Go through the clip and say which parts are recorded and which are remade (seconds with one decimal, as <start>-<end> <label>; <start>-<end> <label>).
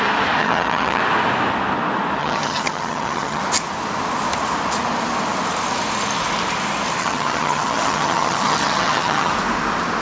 0.0-0.4 recorded; 0.4-1.0 remade; 1.0-2.2 recorded; 2.2-3.4 remade; 3.4-7.0 recorded; 7.0-9.3 remade; 9.3-10.0 recorded